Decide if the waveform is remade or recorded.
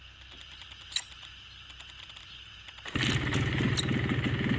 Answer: recorded